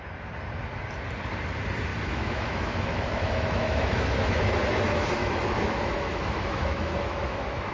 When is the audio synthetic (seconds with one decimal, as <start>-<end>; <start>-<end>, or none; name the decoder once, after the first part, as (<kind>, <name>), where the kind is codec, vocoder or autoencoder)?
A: 1.9-4.5 (autoencoder, DAC-VAE); 5.2-7.7